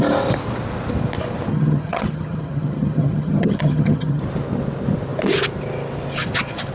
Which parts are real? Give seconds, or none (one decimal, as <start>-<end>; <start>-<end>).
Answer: 0.0-1.5; 4.2-6.7

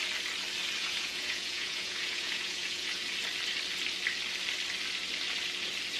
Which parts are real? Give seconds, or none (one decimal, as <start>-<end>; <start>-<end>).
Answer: 0.0-0.8; 3.0-6.0

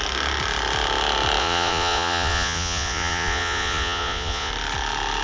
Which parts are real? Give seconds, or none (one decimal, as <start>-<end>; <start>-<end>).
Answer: 0.0-1.4; 4.5-5.2

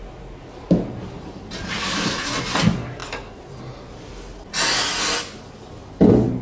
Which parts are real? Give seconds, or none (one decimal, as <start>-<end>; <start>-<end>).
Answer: 0.0-6.4

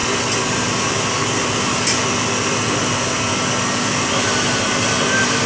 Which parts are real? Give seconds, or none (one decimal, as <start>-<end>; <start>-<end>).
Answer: 0.0-5.5

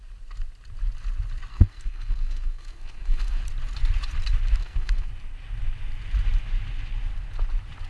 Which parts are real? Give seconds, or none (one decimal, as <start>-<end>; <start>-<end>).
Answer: 0.0-1.5; 3.4-4.6; 5.1-7.9